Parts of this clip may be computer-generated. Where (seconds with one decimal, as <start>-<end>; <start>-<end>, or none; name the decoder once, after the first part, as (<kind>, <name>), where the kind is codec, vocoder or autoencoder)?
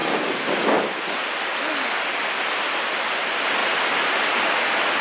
3.6-4.5 (vocoder, BigVGAN v2)